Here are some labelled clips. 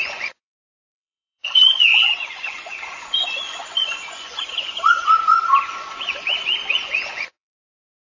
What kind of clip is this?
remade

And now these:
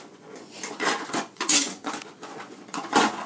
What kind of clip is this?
remade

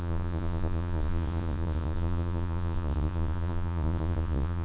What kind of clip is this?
remade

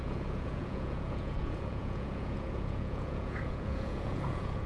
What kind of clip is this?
remade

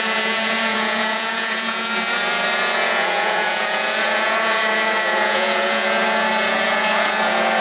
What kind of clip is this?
remade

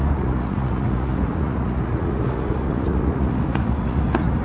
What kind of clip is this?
remade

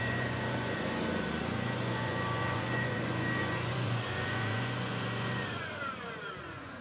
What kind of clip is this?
remade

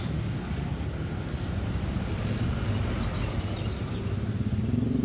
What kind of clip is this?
recorded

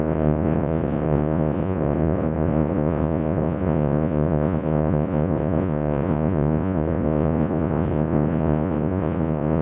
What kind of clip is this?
remade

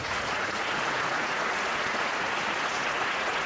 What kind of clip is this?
remade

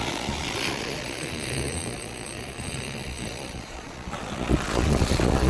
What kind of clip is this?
remade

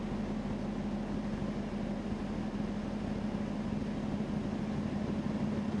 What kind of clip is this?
recorded